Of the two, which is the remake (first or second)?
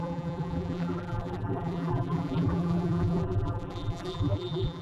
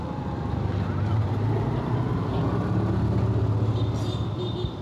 first